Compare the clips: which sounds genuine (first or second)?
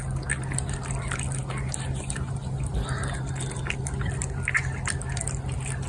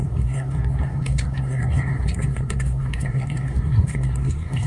first